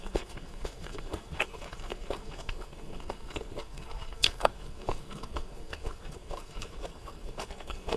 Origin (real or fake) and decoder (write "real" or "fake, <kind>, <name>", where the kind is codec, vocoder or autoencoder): fake, codec, SNAC